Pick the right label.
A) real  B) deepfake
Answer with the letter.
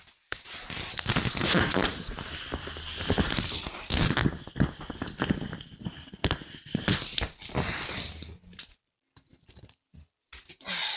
A